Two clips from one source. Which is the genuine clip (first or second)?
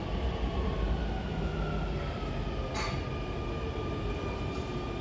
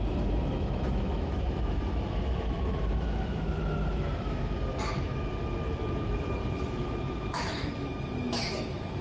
first